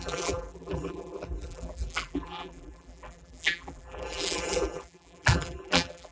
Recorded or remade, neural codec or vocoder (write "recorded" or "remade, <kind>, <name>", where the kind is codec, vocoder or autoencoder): remade, vocoder, BigVGAN v2